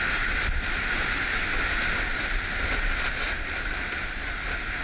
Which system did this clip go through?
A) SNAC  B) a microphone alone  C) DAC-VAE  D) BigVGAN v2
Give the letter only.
B